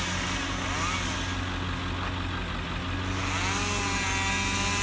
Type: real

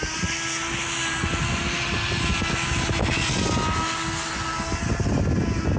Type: real